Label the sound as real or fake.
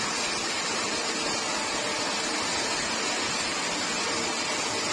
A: real